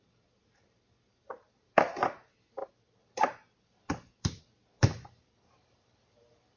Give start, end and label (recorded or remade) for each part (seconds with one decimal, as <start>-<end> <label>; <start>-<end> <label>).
0.0-6.6 remade

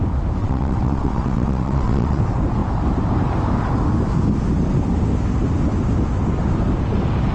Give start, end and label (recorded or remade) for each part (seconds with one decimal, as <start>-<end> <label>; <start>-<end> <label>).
0.0-0.4 recorded; 0.4-2.2 remade; 2.2-7.3 recorded

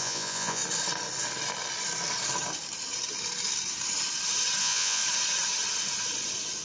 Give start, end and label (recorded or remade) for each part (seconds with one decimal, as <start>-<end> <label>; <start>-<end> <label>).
0.0-0.6 remade; 0.6-4.6 recorded; 4.6-5.0 remade; 5.0-6.6 recorded

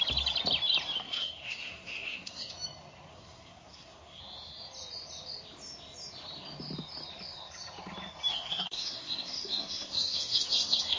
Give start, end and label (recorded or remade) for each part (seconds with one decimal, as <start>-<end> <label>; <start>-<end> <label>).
0.0-1.0 recorded; 1.0-2.5 remade; 2.5-3.1 recorded; 3.1-4.2 remade; 4.2-8.3 recorded; 8.3-11.0 remade

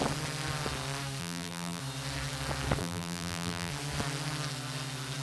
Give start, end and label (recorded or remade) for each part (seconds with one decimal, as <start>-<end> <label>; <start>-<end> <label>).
0.0-1.2 recorded; 1.2-1.8 remade; 1.8-2.8 recorded; 2.8-3.7 remade; 3.7-5.2 recorded